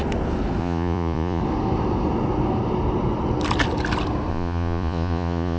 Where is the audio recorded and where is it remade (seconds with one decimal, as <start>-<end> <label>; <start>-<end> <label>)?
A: 0.0-0.6 recorded; 0.6-1.4 remade; 1.4-4.3 recorded; 4.3-5.6 remade